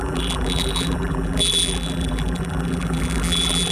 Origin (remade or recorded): remade